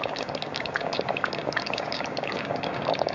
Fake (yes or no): yes